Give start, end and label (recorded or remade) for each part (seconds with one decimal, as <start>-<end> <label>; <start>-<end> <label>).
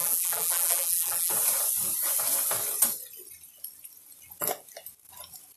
0.0-1.3 remade; 1.3-5.6 recorded